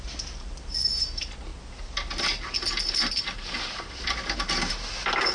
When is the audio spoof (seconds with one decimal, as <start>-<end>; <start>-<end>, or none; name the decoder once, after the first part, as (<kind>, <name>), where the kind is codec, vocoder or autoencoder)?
none